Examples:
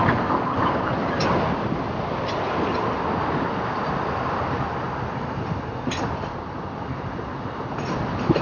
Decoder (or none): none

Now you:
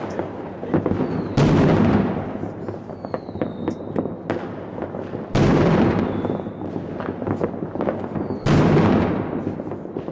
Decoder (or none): none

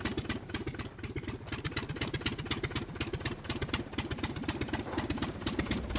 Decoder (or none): none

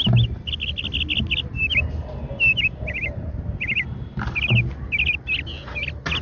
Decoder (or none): none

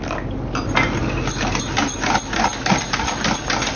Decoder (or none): none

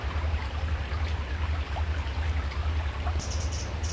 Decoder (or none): vocoder, BigVGAN v2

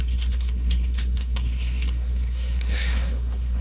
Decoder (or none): codec, SNAC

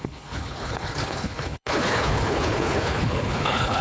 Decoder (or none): codec, HILCodec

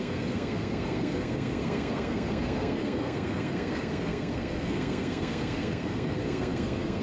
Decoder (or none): codec, SNAC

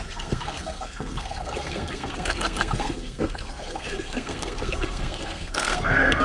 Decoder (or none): codec, SNAC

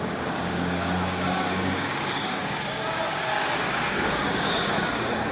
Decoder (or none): codec, DAC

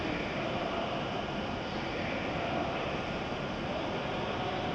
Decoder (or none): none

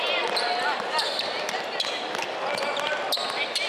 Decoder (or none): none